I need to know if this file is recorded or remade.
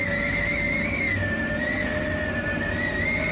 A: recorded